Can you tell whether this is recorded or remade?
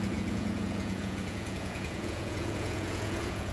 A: remade